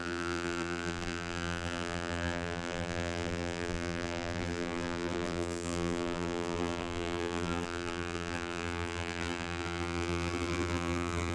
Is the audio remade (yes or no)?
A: yes